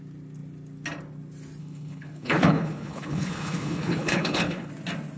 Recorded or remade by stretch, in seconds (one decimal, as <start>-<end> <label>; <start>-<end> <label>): 0.0-1.6 recorded; 1.6-4.7 remade; 4.7-5.2 recorded